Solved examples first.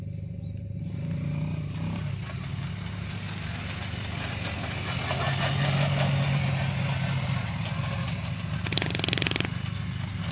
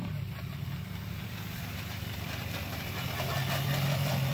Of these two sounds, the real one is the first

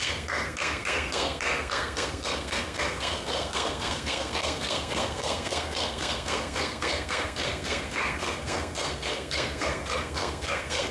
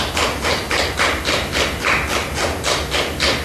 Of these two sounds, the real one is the second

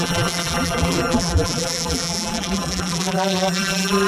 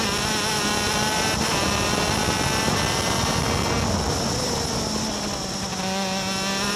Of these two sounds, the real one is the second